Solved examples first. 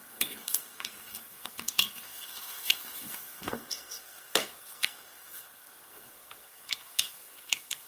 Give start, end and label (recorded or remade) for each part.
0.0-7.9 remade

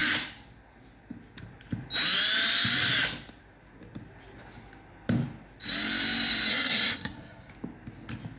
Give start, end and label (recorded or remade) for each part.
0.0-6.5 recorded; 6.5-7.5 remade; 7.5-8.4 recorded

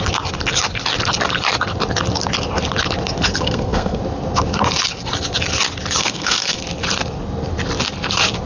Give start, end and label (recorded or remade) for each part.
0.0-3.3 recorded; 3.3-4.0 remade; 4.0-6.0 recorded; 6.0-6.6 remade; 6.6-8.5 recorded

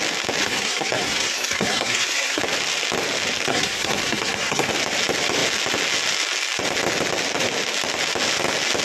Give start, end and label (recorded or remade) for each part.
0.0-0.4 recorded; 0.4-2.4 remade; 2.4-3.5 recorded; 3.5-4.7 remade; 4.7-8.8 recorded